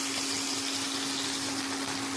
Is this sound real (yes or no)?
yes